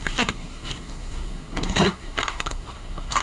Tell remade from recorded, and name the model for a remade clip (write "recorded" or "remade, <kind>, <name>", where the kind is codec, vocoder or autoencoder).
remade, codec, SNAC